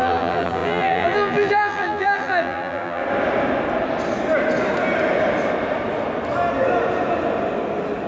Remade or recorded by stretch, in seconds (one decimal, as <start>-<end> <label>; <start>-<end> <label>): 0.0-3.0 remade; 3.0-8.1 recorded